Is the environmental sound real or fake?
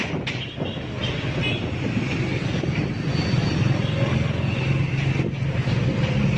real